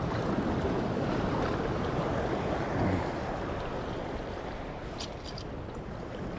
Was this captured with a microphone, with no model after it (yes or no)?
yes